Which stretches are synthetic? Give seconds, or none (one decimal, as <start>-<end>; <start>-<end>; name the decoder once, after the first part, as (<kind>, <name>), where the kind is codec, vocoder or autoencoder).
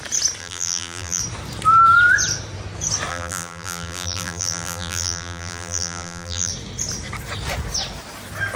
0.4-1.2 (vocoder, BigVGAN v2); 3.1-6.5